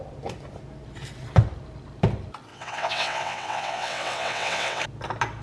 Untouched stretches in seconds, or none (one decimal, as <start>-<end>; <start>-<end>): 0.0-2.5; 4.8-5.4